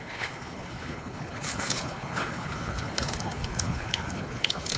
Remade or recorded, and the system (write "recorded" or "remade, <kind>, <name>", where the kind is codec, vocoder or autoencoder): remade, codec, HILCodec